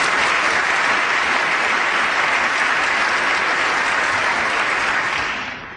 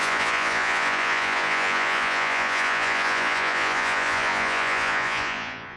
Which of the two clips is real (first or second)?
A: first